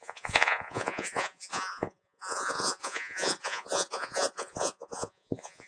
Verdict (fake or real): fake